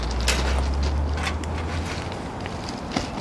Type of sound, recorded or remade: recorded